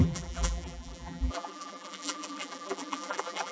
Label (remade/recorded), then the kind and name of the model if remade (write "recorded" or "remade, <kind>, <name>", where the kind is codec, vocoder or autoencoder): remade, vocoder, BigVGAN v2